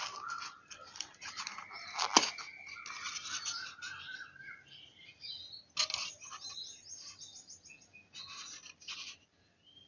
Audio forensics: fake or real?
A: real